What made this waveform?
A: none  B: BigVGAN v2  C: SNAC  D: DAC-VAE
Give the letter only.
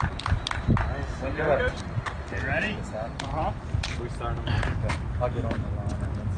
A